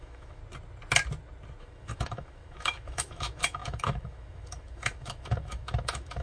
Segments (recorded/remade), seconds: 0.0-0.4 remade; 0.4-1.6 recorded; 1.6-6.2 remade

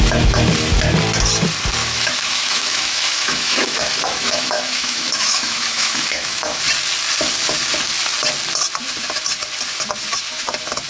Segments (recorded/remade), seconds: 0.0-1.8 recorded; 1.8-6.6 remade; 6.6-10.9 recorded

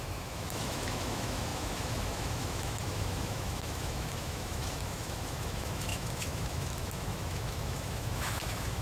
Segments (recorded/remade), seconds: 0.0-8.8 remade

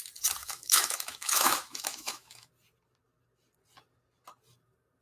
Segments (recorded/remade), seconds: 0.0-0.4 recorded; 0.4-2.5 remade; 2.5-5.0 recorded

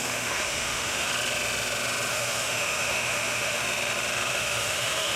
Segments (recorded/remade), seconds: 0.0-1.1 remade; 1.1-2.1 recorded; 2.1-3.6 remade; 3.6-4.3 recorded; 4.3-5.2 remade